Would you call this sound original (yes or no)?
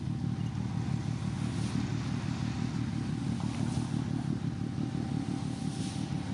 yes